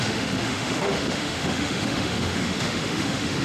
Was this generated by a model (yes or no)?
yes